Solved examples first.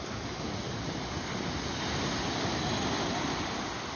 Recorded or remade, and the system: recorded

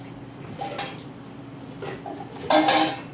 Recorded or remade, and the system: recorded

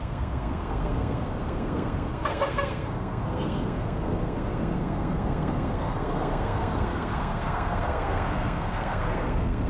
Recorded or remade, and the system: remade, codec, SNAC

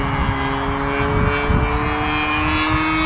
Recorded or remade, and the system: recorded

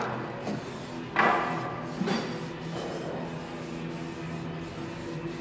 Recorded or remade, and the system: recorded